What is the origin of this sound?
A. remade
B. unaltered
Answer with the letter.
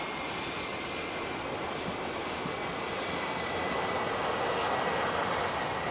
B